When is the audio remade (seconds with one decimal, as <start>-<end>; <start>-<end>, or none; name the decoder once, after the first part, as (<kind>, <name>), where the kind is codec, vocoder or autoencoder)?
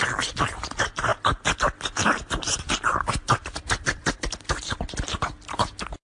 none